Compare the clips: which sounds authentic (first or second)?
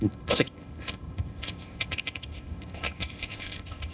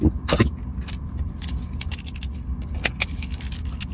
second